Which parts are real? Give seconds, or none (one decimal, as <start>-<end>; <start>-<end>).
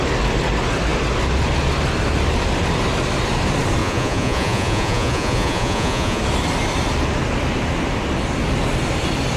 0.0-3.8; 6.2-9.4